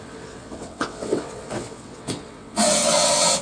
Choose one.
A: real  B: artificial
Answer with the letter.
B